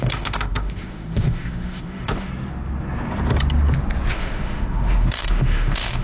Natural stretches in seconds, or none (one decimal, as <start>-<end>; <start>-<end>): 2.3-4.1